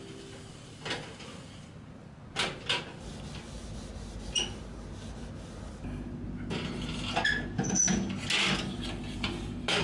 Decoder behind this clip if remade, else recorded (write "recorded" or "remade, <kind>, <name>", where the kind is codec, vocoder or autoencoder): recorded